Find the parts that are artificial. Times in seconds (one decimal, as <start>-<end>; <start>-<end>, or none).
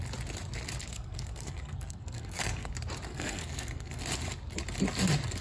0.9-2.7; 3.1-4.0